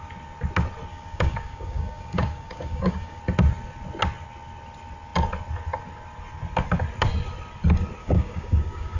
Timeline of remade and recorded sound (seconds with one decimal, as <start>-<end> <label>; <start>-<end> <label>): 0.0-0.9 recorded; 0.9-3.2 remade; 3.2-8.0 recorded; 8.0-9.0 remade